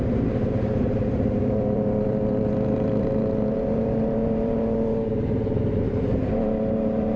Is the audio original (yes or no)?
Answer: no